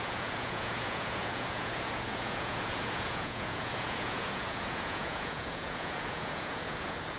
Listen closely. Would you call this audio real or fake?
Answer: fake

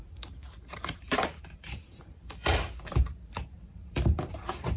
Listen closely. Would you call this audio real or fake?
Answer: fake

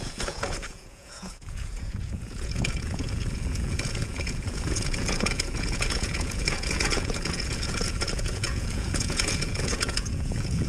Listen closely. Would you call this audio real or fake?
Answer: fake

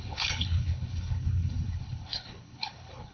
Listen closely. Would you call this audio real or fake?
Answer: fake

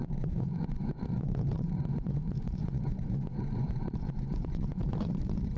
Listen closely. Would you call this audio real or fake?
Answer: fake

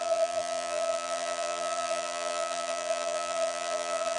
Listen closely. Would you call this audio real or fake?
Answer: fake